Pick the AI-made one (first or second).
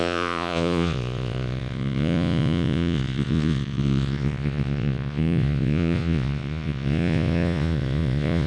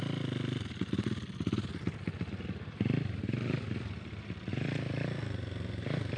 first